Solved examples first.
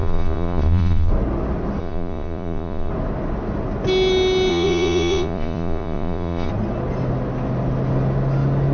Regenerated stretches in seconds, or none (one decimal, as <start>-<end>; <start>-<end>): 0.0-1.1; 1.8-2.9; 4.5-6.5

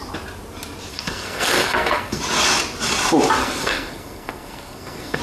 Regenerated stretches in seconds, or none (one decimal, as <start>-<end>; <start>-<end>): 0.9-2.2; 3.4-5.2

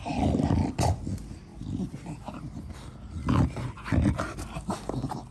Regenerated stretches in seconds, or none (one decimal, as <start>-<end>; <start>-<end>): none

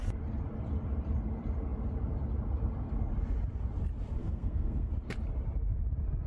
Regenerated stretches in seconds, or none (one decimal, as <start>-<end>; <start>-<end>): 4.2-4.9

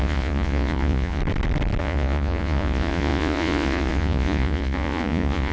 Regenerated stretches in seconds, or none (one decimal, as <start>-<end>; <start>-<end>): 0.0-1.2; 1.8-5.5